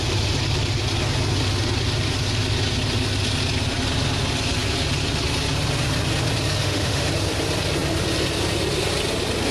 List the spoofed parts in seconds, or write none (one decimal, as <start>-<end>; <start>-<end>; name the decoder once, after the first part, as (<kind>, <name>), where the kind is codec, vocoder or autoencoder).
6.6-7.1 (autoencoder, DAC-VAE)